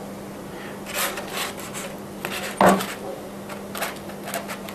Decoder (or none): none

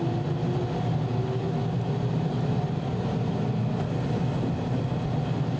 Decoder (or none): none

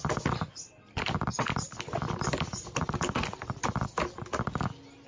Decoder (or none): none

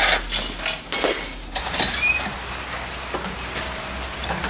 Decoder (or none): none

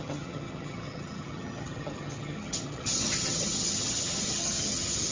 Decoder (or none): vocoder, HiFi-GAN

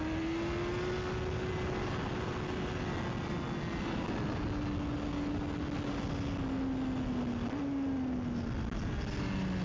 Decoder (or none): none